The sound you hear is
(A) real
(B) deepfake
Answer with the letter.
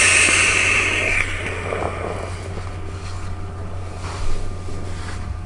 A